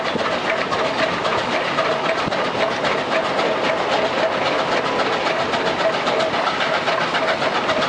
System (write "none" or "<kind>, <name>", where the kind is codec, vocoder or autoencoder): none